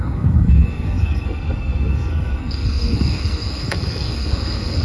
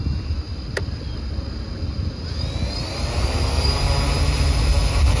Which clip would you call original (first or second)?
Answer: second